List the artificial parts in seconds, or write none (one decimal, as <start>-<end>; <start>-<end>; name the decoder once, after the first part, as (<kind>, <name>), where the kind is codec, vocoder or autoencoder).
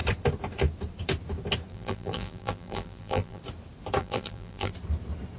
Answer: 1.7-3.4 (vocoder, BigVGAN v2); 4.0-4.7